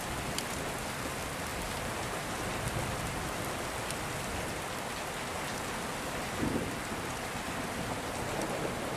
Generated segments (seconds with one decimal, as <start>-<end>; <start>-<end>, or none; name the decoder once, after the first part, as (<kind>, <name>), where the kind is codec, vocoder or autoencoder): 1.5-2.4 (vocoder, BigVGAN v2)